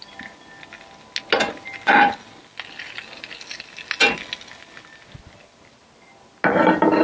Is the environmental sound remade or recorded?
recorded